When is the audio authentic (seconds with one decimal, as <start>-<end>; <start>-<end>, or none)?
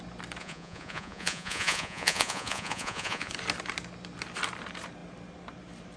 0.0-0.4; 3.3-6.0